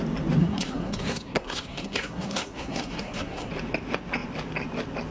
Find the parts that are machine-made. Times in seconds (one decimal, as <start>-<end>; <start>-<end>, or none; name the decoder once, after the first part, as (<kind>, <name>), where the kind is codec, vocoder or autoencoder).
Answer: 0.4-3.5 (codec, SNAC)

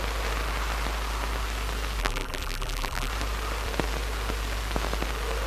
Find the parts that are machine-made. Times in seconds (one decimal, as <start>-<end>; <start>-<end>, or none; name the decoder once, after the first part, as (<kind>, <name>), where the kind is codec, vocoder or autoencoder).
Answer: 2.0-3.1 (vocoder, BigVGAN v2)